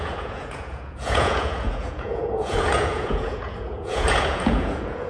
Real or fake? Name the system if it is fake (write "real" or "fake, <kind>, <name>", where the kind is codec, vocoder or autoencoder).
fake, vocoder, Vocos